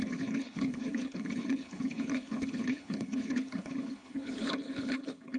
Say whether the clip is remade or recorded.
remade